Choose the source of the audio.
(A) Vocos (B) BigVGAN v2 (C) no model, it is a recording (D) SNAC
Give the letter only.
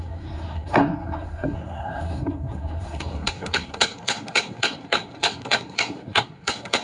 D